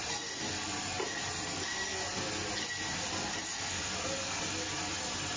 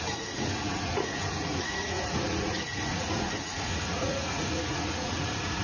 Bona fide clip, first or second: first